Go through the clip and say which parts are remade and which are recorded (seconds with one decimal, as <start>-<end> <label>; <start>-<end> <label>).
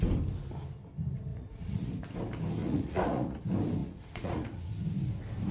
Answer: 0.0-1.3 recorded; 1.3-1.9 remade; 1.9-2.6 recorded; 2.6-3.4 remade; 3.4-3.8 recorded; 3.8-4.7 remade; 4.7-5.5 recorded